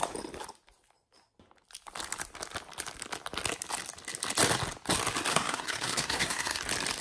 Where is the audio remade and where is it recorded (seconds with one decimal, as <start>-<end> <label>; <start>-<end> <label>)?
0.0-5.3 recorded; 5.3-6.6 remade; 6.6-7.0 recorded